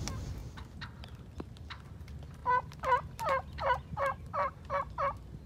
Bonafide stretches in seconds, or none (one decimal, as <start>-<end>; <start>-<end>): 0.0-2.4; 4.9-5.5